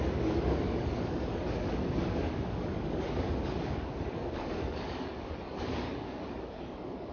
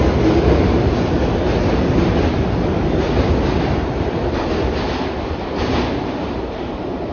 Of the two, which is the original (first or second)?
second